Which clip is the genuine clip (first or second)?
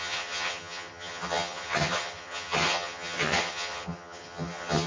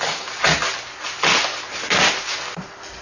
second